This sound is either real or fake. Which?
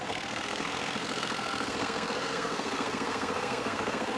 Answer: fake